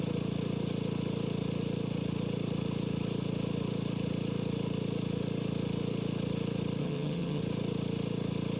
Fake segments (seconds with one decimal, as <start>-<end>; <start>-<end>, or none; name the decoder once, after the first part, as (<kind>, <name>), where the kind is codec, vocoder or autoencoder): 6.8-7.4 (vocoder, HiFi-GAN)